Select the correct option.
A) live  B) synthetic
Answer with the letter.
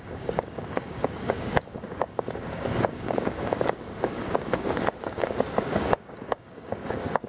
B